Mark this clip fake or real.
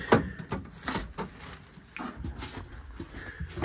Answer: real